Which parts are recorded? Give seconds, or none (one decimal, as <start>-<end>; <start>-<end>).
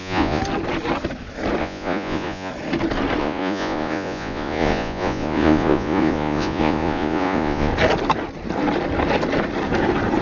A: 0.4-1.6; 2.5-3.2; 7.7-10.2